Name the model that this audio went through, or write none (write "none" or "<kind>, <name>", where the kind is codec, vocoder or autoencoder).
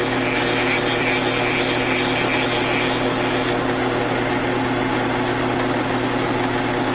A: none